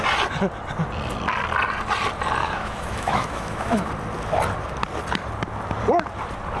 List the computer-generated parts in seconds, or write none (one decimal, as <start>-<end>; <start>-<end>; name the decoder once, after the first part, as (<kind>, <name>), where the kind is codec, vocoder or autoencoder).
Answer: 2.4-3.9 (autoencoder, DAC-VAE)